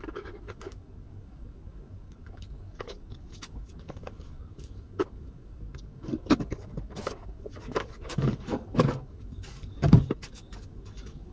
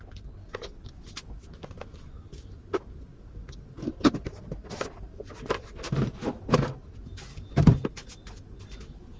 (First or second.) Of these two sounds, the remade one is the first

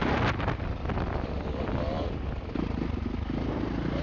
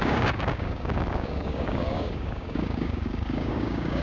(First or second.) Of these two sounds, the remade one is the second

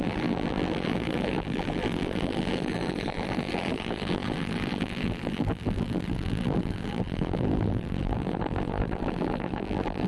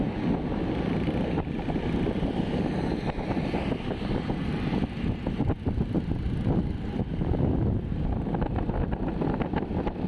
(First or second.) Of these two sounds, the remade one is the first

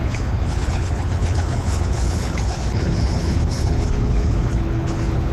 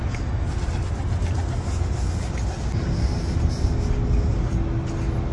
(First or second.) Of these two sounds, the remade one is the first